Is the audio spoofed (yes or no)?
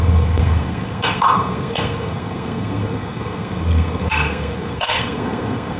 yes